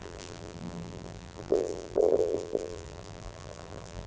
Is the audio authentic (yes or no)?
no